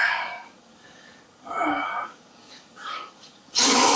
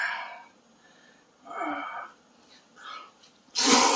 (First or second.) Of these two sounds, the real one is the second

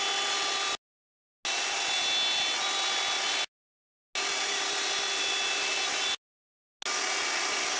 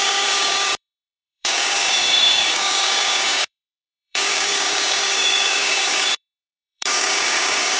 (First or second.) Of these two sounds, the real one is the first